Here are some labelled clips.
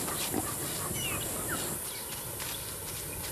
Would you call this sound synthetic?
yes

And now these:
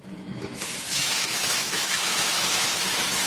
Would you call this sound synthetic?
yes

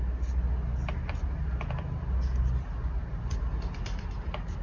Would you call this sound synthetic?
no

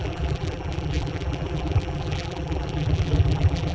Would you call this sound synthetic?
yes